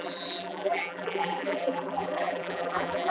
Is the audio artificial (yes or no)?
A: yes